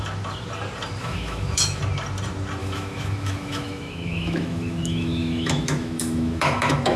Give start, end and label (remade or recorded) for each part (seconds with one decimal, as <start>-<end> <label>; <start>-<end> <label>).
0.0-1.0 recorded; 1.0-1.8 remade; 1.8-2.6 recorded; 2.6-7.0 remade